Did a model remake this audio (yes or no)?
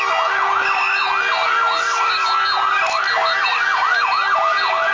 no